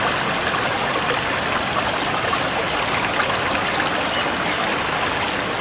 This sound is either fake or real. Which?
real